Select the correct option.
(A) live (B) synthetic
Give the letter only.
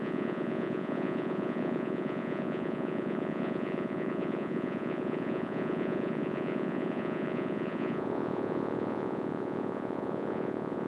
B